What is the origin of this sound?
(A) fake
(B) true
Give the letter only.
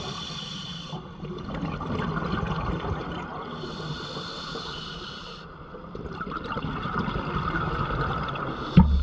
B